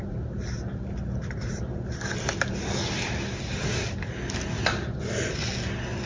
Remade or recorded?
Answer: recorded